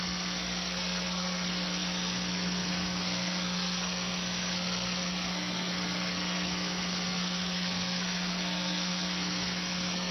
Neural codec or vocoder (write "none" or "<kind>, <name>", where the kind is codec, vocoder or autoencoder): codec, SNAC